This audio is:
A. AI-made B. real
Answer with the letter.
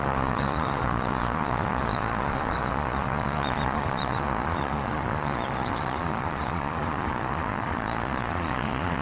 A